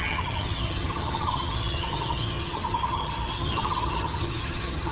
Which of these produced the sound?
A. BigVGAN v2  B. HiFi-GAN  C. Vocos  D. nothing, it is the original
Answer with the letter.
B